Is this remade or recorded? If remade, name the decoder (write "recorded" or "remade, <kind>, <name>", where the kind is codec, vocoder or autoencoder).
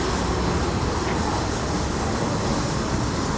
recorded